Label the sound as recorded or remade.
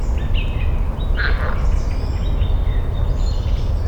recorded